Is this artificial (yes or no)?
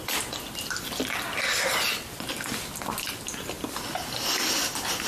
no